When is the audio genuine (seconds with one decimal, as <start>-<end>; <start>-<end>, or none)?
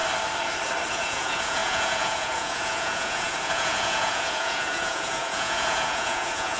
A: 0.0-0.9